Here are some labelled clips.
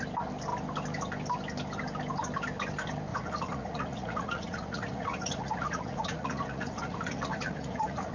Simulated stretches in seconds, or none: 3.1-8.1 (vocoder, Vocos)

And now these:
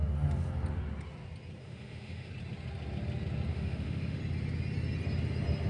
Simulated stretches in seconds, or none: 1.6-2.3 (autoencoder, DAC-VAE); 3.5-4.2

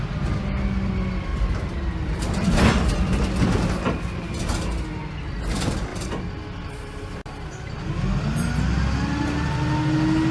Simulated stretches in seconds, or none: none

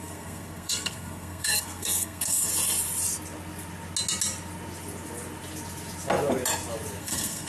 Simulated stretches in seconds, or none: 0.0-2.5 (codec, SNAC); 7.0-7.5

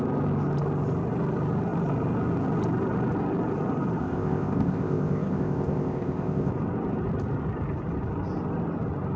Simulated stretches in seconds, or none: 4.0-6.5 (codec, ZipCodec)

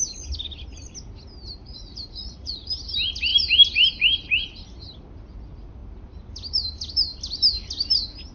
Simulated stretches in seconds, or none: 1.6-2.7 (vocoder, Vocos)

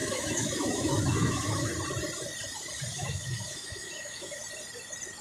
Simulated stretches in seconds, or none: 0.0-1.7 (autoencoder, DAC-VAE); 2.9-4.4